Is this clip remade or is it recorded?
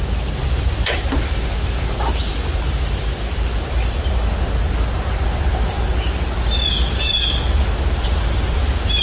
recorded